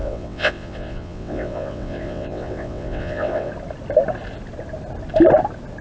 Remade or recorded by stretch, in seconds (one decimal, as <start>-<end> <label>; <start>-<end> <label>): 0.0-3.5 remade; 3.5-5.8 recorded